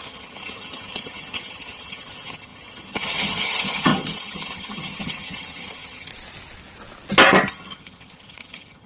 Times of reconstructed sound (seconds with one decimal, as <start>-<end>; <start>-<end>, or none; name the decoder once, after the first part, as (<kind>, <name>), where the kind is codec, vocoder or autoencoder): 0.0-6.1 (vocoder, HiFi-GAN); 7.5-8.9